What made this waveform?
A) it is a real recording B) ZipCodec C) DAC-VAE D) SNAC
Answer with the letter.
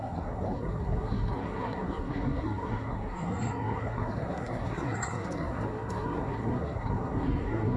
D